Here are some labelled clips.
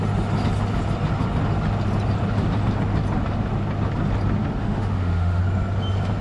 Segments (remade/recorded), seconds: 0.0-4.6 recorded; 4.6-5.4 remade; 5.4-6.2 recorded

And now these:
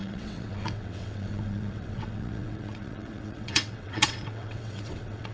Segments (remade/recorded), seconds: 0.0-5.3 remade

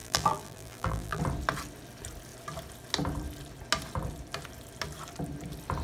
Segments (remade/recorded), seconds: 0.0-1.2 remade; 1.2-5.8 recorded

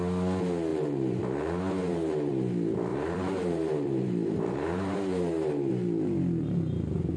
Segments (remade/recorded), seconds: 0.0-0.7 recorded; 0.7-1.2 remade; 1.2-1.8 recorded; 1.8-2.3 remade; 2.3-2.9 recorded; 2.9-5.7 remade; 5.7-7.2 recorded